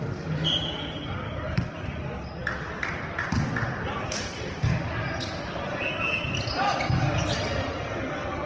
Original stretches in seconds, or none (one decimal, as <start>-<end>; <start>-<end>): 0.0-8.5

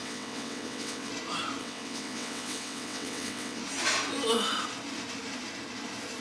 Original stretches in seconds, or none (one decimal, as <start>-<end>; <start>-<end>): 1.1-1.6; 3.6-6.2

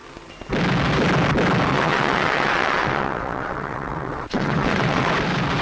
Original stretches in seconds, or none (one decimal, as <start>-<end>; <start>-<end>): 0.0-1.7; 5.1-5.6

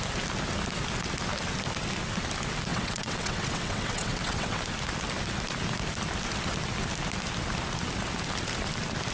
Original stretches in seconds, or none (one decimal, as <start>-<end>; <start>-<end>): 0.0-2.7; 4.6-9.1